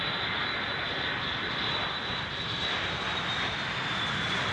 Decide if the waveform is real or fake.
fake